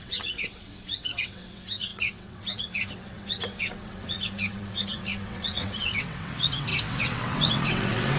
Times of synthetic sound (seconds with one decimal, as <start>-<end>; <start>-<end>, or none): 0.0-8.2